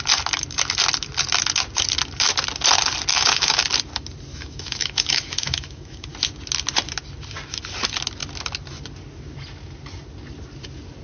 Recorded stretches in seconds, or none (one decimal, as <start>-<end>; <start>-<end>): 0.0-3.1; 3.6-4.3; 6.1-11.0